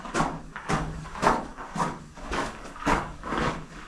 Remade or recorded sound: remade